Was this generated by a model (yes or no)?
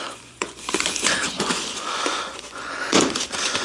yes